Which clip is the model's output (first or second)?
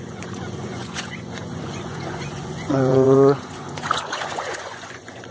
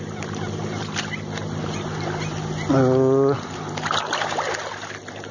first